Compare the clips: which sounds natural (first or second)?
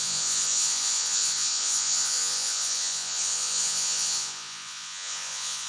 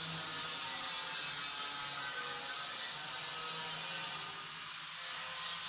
second